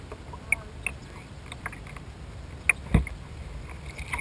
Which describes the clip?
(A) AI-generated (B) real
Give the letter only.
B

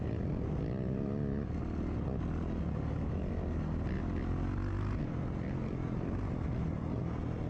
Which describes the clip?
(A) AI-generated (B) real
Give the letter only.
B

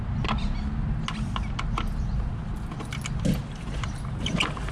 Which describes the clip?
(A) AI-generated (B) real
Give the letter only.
B